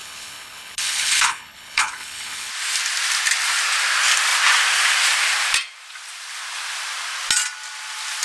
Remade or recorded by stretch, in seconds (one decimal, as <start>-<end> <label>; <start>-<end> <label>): 0.0-2.5 remade; 2.5-8.2 recorded